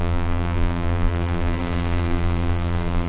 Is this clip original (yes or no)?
no